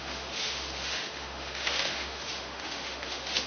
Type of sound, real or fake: fake